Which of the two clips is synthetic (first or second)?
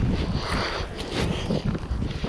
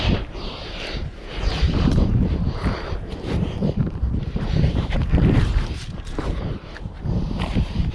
second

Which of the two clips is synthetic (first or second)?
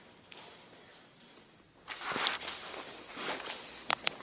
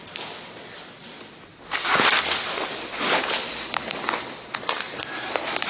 first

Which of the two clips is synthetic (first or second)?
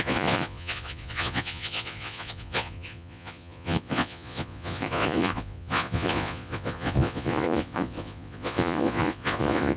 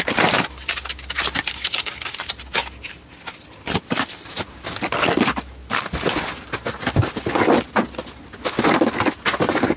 first